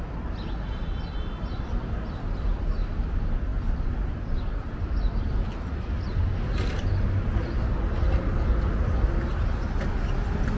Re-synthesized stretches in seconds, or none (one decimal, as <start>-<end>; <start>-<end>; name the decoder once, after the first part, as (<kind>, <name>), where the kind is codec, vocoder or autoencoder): none

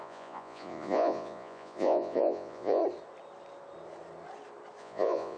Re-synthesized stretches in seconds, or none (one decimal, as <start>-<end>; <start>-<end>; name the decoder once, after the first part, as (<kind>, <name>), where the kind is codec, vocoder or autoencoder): 0.0-2.8 (vocoder, Vocos); 4.8-5.4

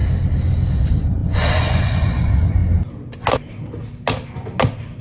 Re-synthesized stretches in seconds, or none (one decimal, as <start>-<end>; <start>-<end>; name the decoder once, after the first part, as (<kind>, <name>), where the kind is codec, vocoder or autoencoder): 0.7-2.6 (vocoder, Vocos)